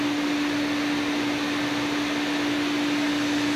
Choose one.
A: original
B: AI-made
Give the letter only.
A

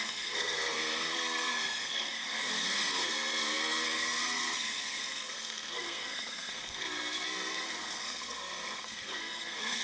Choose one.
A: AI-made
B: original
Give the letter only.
A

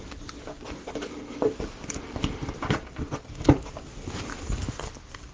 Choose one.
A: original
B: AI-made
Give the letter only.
A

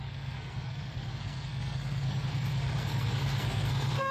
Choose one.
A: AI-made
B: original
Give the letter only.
A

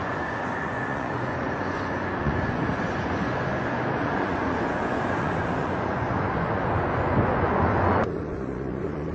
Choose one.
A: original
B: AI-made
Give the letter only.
B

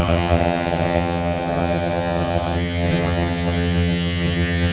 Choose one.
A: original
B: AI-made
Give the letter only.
B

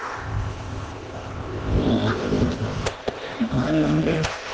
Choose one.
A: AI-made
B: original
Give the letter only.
A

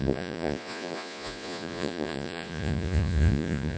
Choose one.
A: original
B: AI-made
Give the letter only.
B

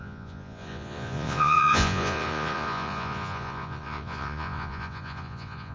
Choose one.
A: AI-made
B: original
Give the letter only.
A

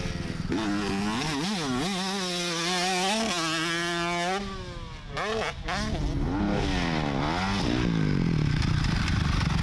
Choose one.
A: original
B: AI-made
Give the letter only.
A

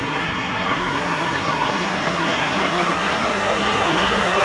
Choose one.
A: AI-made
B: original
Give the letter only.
A